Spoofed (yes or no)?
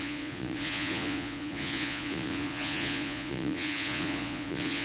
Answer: yes